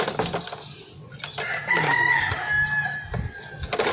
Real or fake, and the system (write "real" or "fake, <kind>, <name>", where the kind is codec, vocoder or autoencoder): real